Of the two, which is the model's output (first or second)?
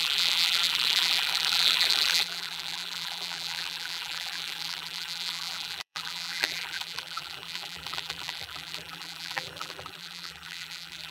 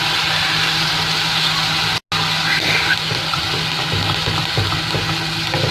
first